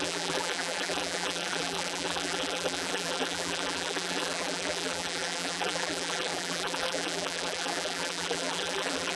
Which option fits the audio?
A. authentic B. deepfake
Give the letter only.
B